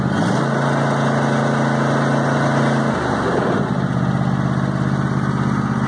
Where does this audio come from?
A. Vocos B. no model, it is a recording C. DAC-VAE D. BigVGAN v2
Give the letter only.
B